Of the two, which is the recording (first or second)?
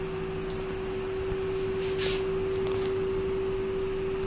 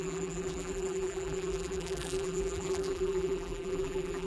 first